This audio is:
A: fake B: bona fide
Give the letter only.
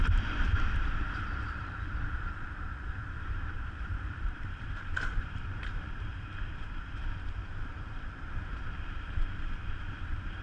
A